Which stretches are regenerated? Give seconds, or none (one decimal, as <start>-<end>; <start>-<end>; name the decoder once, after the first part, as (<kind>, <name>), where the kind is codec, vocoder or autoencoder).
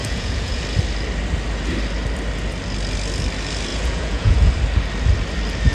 0.0-0.6 (vocoder, Vocos); 3.7-4.5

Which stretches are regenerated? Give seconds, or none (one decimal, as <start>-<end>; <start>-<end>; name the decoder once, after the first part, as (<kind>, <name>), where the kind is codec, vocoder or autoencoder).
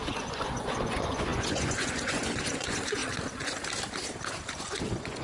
0.0-3.0 (vocoder, Vocos); 4.5-5.2